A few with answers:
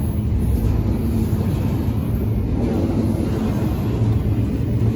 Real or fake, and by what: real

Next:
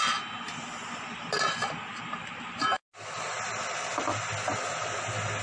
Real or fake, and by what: real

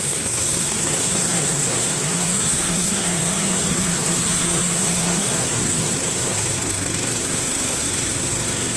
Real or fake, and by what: fake, codec, SNAC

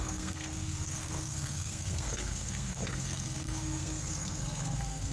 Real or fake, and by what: fake, codec, SNAC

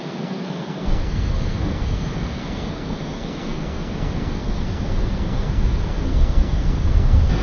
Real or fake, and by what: fake, codec, SNAC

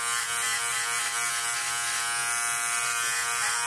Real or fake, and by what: real